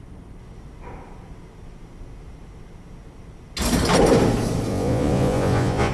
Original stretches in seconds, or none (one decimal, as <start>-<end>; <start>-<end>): 0.0-4.7